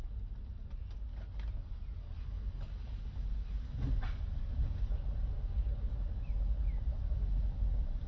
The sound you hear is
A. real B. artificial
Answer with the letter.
A